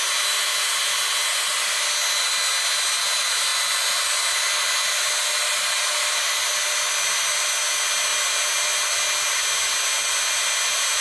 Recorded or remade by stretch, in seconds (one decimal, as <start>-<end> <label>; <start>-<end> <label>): 0.0-11.0 recorded